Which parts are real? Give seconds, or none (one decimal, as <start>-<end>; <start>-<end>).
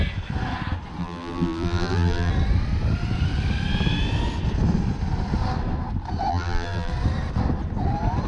0.0-1.0; 2.3-6.3; 6.9-8.3